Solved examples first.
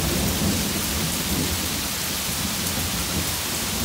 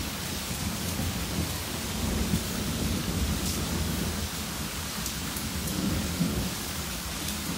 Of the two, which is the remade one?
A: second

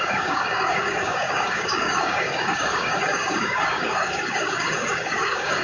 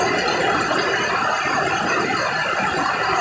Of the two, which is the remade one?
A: first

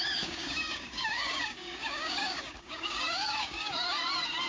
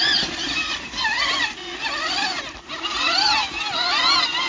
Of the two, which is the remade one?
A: first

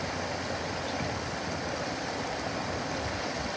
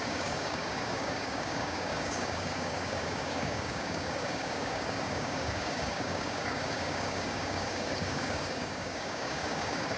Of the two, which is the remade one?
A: second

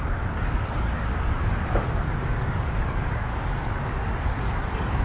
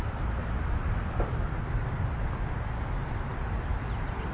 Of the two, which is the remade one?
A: first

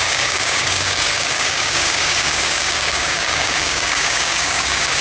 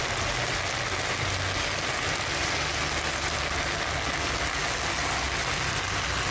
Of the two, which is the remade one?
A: first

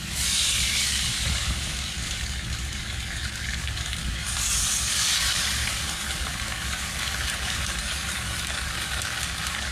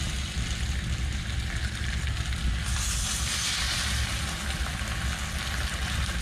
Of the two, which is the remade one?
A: first